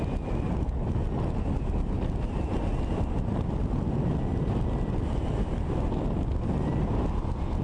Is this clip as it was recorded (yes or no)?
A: yes